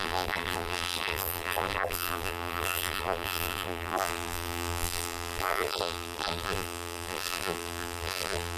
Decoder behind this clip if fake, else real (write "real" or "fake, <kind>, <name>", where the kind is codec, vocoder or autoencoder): fake, vocoder, BigVGAN v2